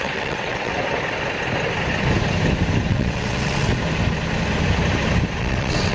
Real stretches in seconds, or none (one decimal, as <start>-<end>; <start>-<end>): 0.7-2.9; 3.7-5.4